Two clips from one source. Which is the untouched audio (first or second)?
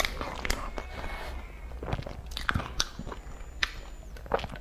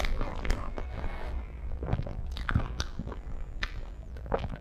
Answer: first